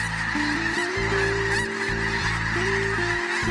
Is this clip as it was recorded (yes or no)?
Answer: yes